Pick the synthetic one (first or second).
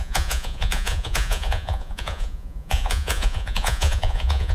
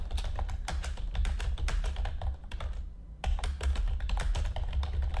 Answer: first